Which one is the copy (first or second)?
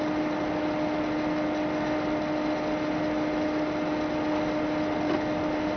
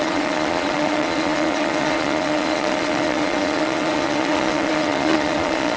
second